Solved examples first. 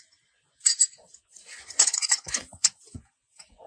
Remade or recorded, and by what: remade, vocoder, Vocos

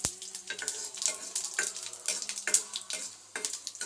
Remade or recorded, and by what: recorded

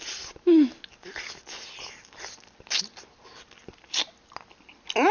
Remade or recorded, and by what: recorded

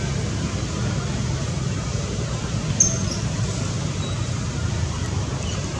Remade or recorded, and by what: recorded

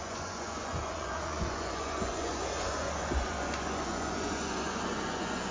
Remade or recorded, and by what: remade, vocoder, Vocos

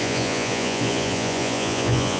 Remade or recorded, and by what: remade, vocoder, Vocos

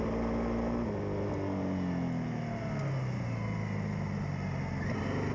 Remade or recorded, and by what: recorded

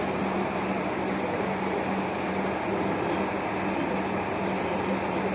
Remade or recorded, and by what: recorded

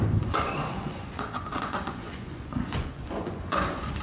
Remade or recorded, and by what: remade, vocoder, Vocos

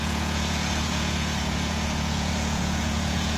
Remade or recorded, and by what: remade, vocoder, Vocos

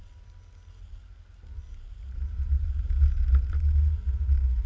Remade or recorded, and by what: recorded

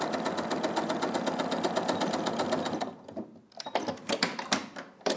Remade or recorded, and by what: recorded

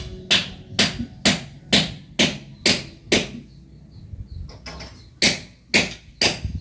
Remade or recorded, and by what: recorded